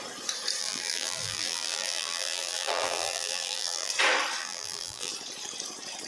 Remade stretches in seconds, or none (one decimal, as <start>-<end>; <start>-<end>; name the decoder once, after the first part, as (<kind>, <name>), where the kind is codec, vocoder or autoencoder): 0.6-3.9 (vocoder, BigVGAN v2); 4.4-5.1